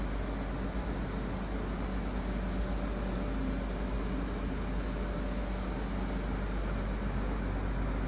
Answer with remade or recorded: recorded